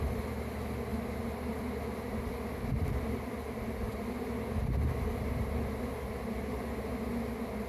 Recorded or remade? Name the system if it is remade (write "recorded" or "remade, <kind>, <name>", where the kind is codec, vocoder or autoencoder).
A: recorded